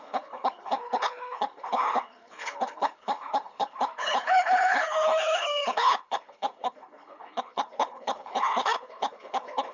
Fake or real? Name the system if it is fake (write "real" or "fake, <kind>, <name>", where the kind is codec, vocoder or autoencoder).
fake, codec, HILCodec